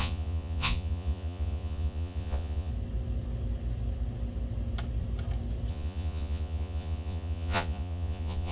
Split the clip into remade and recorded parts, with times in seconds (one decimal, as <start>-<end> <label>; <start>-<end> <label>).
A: 0.0-2.7 remade; 2.7-5.7 recorded; 5.7-8.5 remade